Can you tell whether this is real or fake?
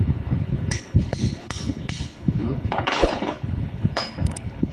fake